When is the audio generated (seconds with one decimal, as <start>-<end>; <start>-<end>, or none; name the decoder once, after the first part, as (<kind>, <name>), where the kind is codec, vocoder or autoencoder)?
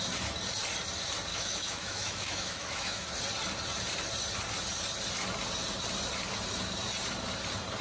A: 1.3-3.1 (autoencoder, DAC-VAE)